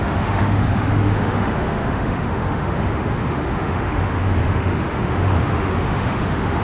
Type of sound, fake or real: fake